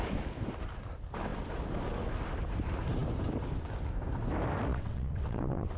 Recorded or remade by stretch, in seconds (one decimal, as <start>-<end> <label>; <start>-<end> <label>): 0.0-4.7 recorded; 4.7-5.8 remade